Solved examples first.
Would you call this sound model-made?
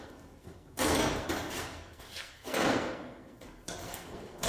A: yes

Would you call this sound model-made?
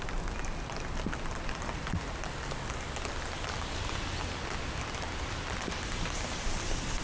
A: no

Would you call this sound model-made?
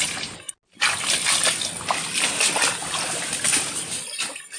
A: no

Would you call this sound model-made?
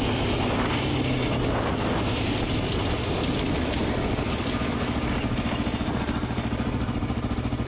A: no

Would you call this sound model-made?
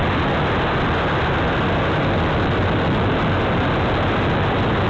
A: no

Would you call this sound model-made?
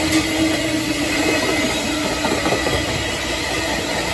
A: no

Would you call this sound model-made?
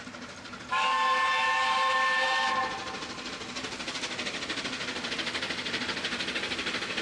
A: no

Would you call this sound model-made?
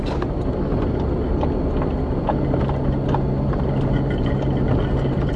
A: no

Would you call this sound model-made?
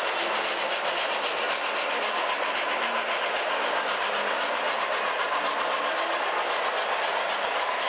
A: no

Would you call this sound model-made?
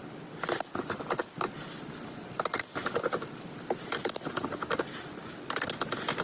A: no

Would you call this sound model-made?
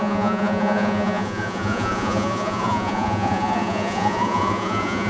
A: yes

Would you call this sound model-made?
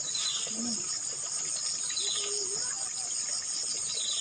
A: no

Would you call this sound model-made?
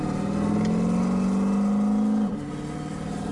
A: no